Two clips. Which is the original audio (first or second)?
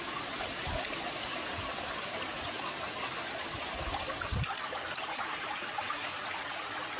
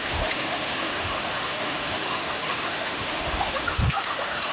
first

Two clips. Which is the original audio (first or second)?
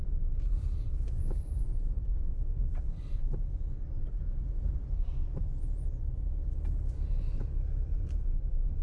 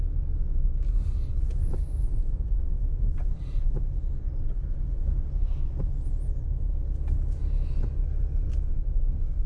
second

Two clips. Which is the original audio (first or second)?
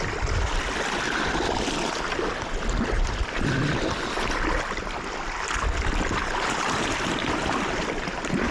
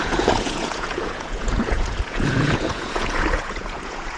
first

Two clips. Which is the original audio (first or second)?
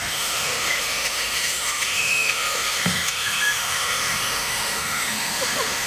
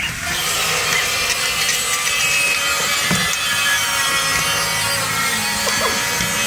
second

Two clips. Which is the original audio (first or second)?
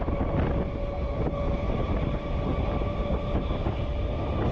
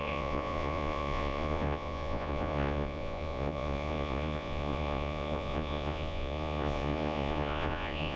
first